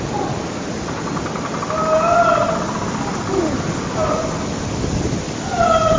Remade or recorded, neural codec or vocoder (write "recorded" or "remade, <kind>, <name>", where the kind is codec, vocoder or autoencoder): recorded